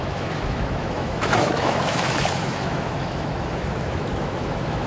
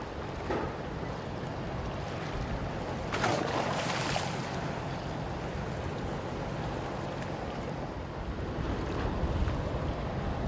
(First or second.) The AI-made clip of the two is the first